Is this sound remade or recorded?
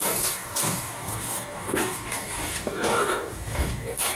remade